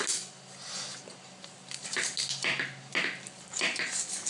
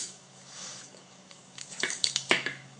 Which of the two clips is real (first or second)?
first